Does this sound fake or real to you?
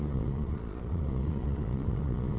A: fake